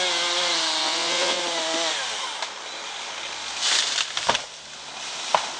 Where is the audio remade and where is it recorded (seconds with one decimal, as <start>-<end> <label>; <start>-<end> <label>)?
0.0-0.8 recorded; 0.8-1.4 remade; 1.4-5.6 recorded